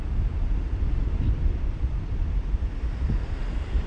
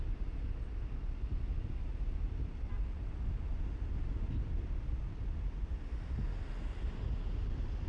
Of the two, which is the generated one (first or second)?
first